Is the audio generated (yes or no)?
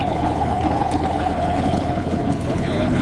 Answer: yes